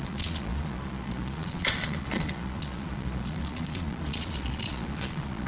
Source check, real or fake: fake